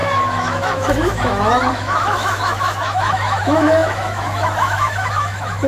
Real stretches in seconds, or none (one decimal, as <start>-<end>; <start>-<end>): none